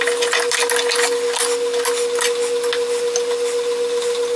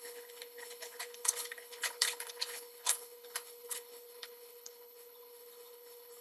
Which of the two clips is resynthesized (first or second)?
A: second